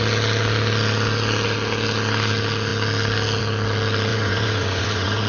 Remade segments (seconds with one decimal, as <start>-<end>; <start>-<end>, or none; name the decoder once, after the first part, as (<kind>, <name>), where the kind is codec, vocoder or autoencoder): 4.1-5.3 (vocoder, Vocos)

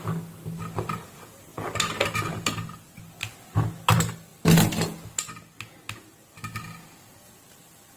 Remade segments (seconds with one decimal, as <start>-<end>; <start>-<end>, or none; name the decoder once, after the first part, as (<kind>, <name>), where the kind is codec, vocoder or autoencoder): none

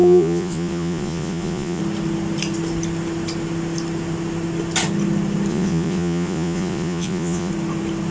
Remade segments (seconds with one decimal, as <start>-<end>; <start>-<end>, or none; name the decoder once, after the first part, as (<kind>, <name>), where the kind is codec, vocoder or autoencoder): 0.0-1.8 (vocoder, Vocos); 5.5-7.5

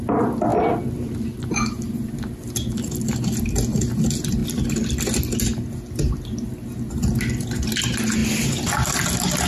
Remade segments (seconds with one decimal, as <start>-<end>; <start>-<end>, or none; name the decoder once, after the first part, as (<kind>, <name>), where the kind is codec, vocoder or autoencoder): none

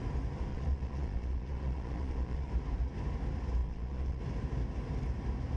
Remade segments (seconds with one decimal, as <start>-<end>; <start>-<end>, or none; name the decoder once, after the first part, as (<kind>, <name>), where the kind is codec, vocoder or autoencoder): 0.5-2.5 (vocoder, Vocos); 3.6-4.2

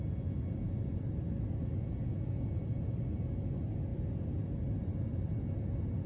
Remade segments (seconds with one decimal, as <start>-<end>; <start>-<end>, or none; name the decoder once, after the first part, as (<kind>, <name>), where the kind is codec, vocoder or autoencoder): 1.7-2.5 (vocoder, Vocos)

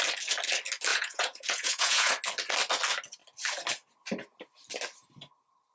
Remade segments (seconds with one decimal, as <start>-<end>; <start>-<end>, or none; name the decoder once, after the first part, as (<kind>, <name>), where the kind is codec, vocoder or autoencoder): 0.9-2.1 (vocoder, Vocos)

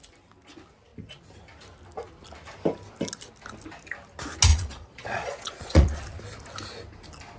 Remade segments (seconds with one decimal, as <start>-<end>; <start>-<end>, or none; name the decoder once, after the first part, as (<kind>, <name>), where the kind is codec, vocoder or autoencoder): 4.5-6.0 (vocoder, Vocos)